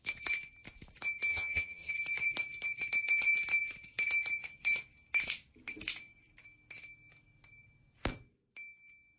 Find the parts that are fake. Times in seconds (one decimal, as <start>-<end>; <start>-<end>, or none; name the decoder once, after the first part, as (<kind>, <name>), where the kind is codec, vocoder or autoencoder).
1.3-1.9 (vocoder, HiFi-GAN)